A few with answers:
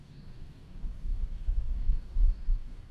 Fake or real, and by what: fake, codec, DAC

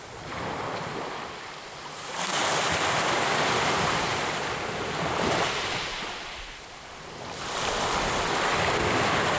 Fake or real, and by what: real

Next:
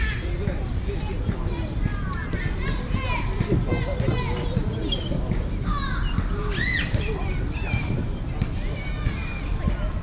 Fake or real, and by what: real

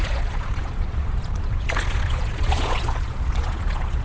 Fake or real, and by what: fake, vocoder, Vocos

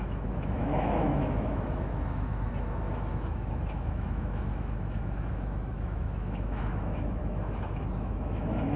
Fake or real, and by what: fake, autoencoder, DAC-VAE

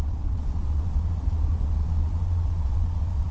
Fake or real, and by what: fake, vocoder, Vocos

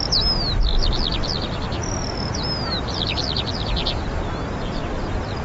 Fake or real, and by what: real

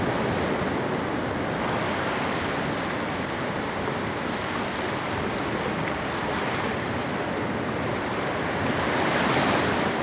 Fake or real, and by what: real